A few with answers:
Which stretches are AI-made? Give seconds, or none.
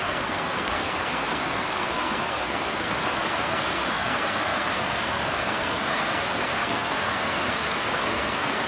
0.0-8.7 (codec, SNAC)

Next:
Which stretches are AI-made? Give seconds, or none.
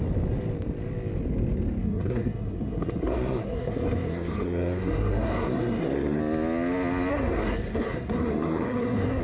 1.8-6.2 (codec, SNAC); 7.1-9.2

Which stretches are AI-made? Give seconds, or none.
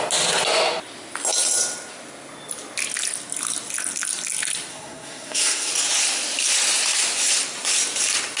4.7-5.7 (codec, SNAC)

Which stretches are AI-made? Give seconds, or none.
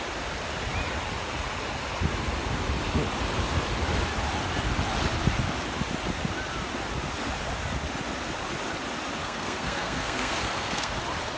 9.2-11.0 (codec, SNAC)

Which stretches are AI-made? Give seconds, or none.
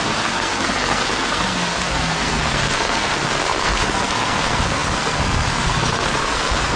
0.0-6.8 (codec, SNAC)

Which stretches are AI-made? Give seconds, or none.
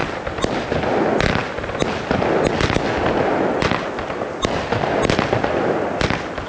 none